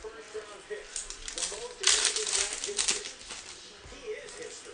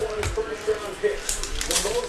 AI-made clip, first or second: second